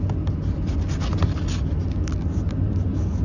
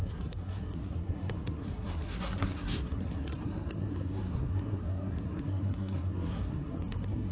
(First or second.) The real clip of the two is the first